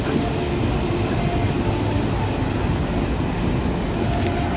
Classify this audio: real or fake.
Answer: real